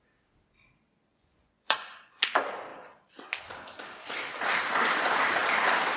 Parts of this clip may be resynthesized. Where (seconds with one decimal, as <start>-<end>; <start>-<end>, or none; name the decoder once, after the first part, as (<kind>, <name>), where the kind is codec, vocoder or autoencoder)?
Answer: 1.1-2.1 (vocoder, Vocos)